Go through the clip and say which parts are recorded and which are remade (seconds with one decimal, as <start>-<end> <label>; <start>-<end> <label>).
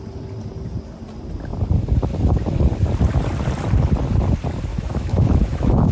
0.0-4.7 recorded; 4.7-5.9 remade